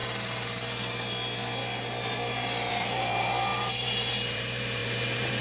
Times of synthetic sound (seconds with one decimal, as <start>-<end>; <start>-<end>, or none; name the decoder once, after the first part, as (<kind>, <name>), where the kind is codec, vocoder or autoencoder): 2.7-5.4 (vocoder, BigVGAN v2)